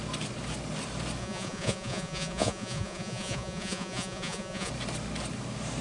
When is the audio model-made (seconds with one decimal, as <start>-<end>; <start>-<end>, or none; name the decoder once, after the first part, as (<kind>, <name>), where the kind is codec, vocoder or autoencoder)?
1.2-4.7 (vocoder, Vocos)